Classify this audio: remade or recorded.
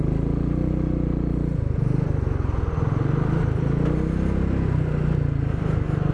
recorded